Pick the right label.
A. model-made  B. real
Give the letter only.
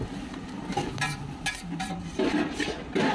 B